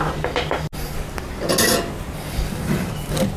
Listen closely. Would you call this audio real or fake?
real